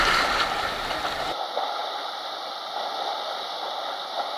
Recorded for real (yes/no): yes